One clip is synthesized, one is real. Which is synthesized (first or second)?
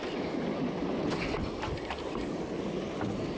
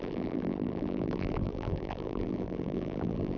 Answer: second